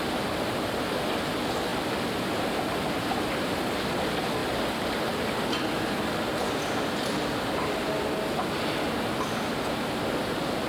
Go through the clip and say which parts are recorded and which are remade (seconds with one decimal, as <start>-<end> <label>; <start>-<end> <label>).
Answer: 0.0-10.7 recorded